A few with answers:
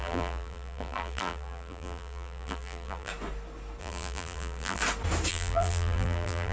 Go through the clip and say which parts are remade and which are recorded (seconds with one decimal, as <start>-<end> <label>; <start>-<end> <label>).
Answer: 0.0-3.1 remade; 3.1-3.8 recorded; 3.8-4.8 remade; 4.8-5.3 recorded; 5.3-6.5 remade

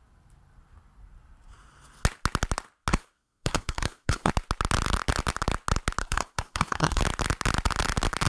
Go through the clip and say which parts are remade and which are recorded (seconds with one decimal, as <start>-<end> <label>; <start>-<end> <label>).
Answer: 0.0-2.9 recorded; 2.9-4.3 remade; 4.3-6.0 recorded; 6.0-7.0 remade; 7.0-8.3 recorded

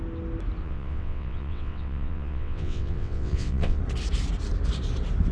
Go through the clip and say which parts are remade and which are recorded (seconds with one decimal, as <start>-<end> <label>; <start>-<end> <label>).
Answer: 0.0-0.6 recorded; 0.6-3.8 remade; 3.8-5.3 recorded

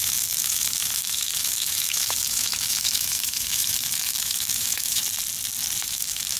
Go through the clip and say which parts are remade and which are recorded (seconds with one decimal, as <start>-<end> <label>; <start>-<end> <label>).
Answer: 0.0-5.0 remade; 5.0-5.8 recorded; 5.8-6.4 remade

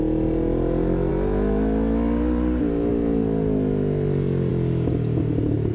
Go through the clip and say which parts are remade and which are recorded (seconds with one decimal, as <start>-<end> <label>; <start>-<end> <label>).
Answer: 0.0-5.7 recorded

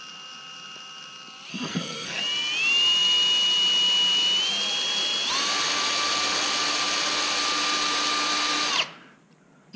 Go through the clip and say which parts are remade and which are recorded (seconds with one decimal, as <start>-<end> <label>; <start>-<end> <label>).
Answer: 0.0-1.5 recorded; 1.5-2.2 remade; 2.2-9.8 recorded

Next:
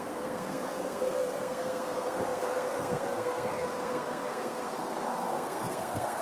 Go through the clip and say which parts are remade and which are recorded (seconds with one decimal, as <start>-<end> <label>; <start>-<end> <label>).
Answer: 0.0-6.2 remade

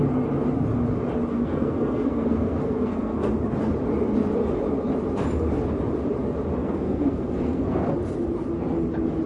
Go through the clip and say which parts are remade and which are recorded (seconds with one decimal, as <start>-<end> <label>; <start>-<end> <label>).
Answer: 0.0-1.3 recorded; 1.3-3.3 remade; 3.3-6.6 recorded; 6.6-7.9 remade; 7.9-9.3 recorded